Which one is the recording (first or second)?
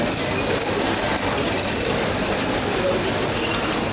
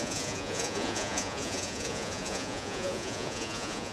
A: first